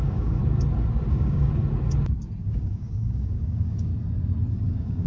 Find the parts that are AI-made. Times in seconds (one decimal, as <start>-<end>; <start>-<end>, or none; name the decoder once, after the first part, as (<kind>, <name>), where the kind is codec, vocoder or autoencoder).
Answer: 0.0-0.4 (codec, DAC); 1.1-1.5; 2.4-3.9; 4.5-5.1